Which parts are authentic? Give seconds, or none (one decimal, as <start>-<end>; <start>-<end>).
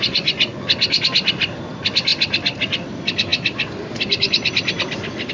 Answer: 0.0-5.3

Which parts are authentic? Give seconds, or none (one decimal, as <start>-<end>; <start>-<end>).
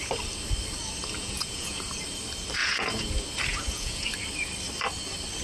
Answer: 0.0-1.2; 1.9-2.6; 3.1-3.5; 4.1-5.4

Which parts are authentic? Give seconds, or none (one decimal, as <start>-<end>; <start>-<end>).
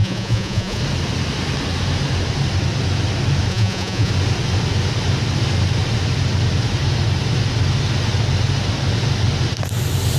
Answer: 0.8-3.5; 4.1-10.2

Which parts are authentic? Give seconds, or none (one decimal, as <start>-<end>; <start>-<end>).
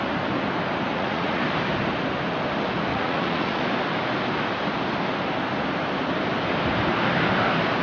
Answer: 0.0-0.9; 1.4-2.9; 3.6-7.8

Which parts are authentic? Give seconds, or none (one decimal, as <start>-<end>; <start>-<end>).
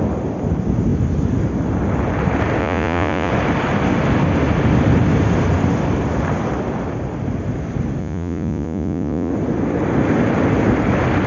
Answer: 0.0-2.6; 3.3-8.0; 9.3-11.3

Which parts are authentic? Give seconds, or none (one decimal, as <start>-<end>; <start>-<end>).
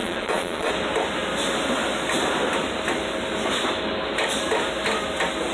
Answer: 0.7-5.5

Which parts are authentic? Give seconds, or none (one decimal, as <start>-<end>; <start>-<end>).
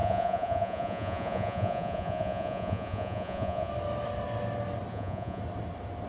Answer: 3.7-4.9; 5.4-6.1